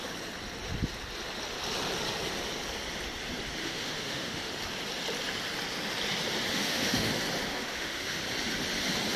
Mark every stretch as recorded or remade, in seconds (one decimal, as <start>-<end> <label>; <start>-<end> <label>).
0.0-3.6 recorded; 3.6-4.5 remade; 4.5-6.5 recorded; 6.5-7.1 remade; 7.1-7.5 recorded; 7.5-8.2 remade; 8.2-9.2 recorded